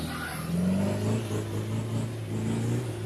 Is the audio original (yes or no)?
yes